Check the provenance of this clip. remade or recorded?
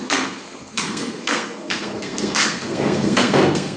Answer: remade